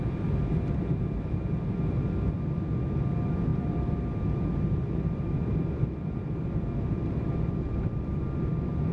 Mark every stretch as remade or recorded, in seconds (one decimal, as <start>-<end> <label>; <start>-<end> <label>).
0.0-3.5 recorded; 3.5-8.9 remade